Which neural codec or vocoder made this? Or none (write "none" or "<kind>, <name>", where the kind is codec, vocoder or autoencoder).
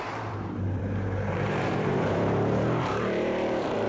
vocoder, BigVGAN v2